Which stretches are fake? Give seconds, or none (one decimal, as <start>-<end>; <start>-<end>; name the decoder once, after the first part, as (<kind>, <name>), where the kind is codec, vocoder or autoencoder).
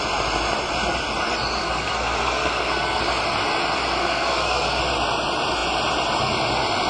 1.6-3.0 (codec, SNAC); 4.0-4.8